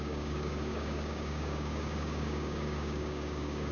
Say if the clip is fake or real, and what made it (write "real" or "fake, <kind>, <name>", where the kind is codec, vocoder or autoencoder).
fake, codec, DAC